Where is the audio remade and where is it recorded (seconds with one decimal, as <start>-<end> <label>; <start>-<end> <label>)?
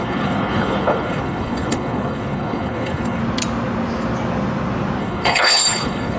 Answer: 0.0-3.2 remade; 3.2-5.0 recorded; 5.0-6.2 remade